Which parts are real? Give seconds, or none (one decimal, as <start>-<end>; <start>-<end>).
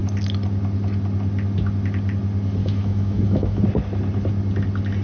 0.0-2.6; 3.6-5.0